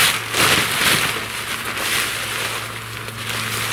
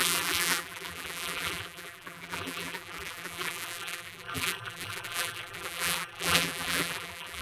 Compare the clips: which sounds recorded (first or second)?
first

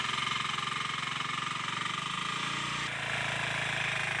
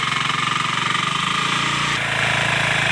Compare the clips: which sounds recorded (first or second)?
first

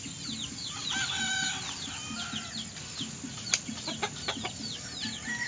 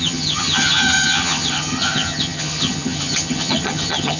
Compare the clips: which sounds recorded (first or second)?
first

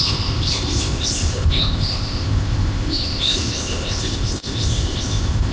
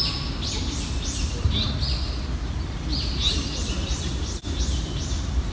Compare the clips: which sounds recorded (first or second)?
second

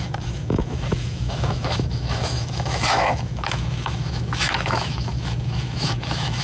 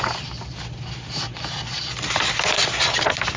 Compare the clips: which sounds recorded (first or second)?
second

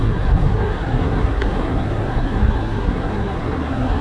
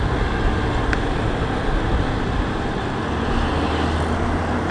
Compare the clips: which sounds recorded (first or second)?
second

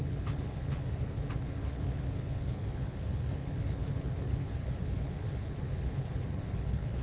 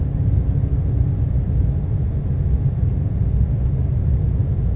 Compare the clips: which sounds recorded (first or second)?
second